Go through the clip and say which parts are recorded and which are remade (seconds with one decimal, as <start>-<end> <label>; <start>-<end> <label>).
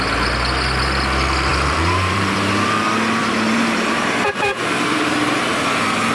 0.0-1.5 recorded; 1.5-2.5 remade; 2.5-3.2 recorded; 3.2-6.1 remade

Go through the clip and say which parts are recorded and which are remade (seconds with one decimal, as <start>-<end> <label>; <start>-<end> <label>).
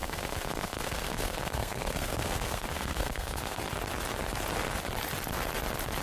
0.0-3.6 remade; 3.6-6.0 recorded